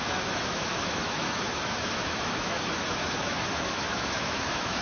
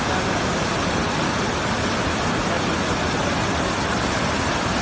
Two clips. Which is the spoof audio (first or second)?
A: first